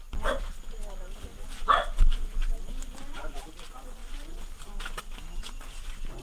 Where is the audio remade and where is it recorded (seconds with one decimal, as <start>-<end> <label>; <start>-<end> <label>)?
0.0-6.2 recorded